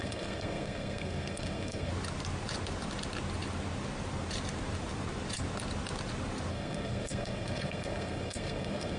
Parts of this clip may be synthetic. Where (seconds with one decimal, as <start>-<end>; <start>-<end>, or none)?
0.0-1.9; 6.5-9.0

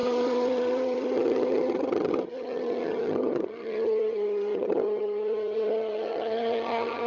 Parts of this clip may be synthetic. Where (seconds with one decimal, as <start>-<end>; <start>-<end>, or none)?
0.0-7.1

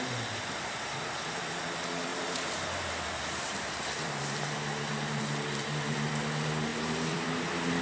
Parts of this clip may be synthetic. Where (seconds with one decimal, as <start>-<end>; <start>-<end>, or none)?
2.1-5.2; 6.7-7.8

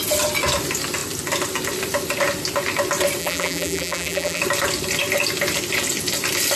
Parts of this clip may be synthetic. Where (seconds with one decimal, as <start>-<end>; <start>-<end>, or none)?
3.2-4.4

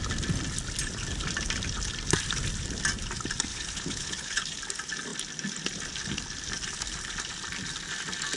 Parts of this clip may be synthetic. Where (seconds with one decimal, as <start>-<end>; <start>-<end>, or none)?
3.5-4.6

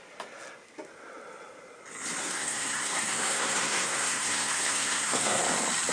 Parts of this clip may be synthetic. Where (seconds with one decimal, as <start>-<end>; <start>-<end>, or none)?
2.2-5.4